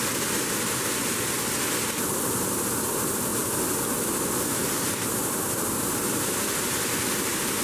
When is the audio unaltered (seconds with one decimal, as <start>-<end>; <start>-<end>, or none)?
0.0-7.6